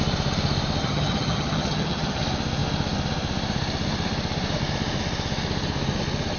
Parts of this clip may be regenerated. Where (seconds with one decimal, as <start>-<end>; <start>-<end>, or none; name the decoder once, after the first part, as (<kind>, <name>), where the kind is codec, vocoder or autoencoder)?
0.8-2.2 (vocoder, HiFi-GAN)